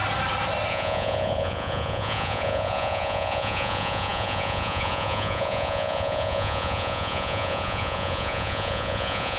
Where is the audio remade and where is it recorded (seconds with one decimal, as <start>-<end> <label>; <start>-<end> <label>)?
0.0-0.7 recorded; 0.7-9.4 remade